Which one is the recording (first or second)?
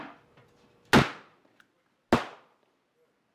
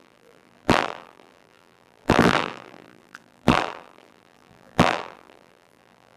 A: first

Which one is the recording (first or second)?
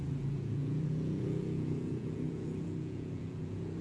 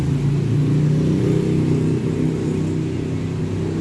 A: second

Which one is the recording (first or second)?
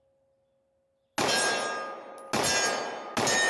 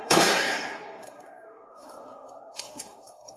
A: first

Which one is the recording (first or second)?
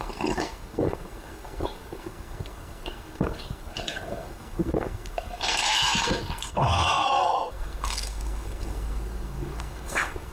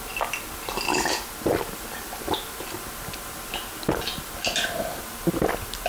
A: second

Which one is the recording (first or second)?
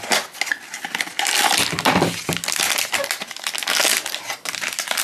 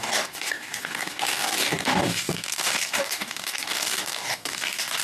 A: first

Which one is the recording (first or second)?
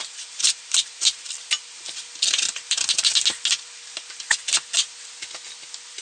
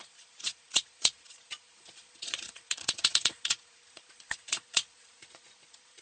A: first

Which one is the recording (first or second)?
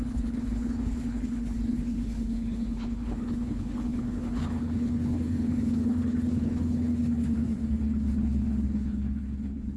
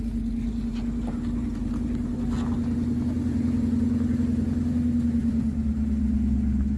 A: second